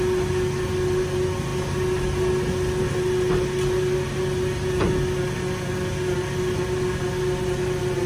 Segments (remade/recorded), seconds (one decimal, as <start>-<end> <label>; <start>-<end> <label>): 0.0-8.1 recorded